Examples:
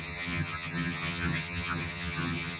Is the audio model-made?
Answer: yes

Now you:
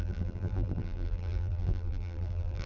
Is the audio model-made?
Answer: yes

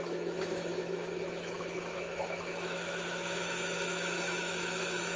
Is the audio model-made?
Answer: yes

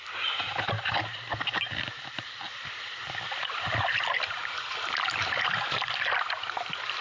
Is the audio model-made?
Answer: yes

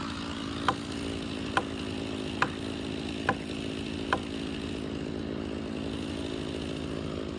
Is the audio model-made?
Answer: no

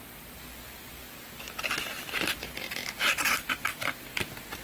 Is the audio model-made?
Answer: no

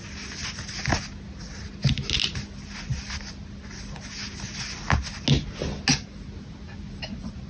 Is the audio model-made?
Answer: no